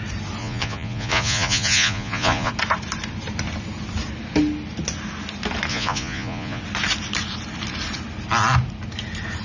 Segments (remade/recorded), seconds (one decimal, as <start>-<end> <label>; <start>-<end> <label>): 0.0-0.4 recorded; 0.4-2.5 remade; 2.5-5.7 recorded; 5.7-6.6 remade; 6.6-9.4 recorded